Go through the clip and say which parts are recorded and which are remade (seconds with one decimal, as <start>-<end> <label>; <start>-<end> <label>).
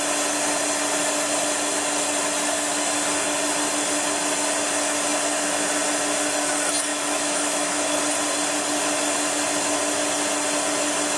0.0-6.9 recorded; 6.9-8.0 remade; 8.0-11.2 recorded